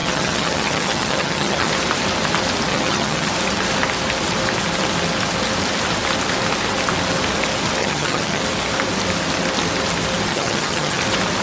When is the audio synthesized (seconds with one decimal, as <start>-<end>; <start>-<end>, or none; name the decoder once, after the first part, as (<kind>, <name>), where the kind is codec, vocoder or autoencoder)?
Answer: 0.0-1.7 (vocoder, HiFi-GAN); 2.7-3.3; 7.8-8.4; 10.3-11.0